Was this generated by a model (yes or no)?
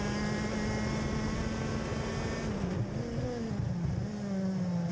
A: no